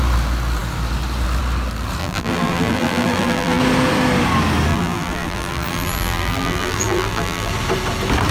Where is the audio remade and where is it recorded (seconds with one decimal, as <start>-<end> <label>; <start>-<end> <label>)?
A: 0.0-2.0 recorded; 2.0-3.6 remade; 3.6-4.7 recorded; 4.7-7.5 remade; 7.5-8.3 recorded